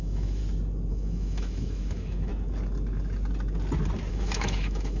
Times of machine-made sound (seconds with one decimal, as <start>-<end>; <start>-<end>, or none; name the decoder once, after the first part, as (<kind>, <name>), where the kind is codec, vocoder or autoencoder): 0.0-0.4 (autoencoder, DAC-VAE); 0.9-2.3; 4.1-5.0